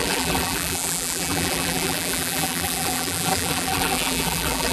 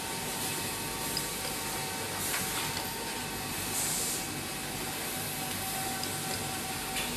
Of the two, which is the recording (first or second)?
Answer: second